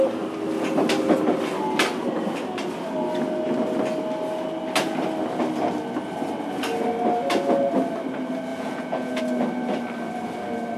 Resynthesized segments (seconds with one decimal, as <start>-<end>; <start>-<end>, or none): 8.5-9.2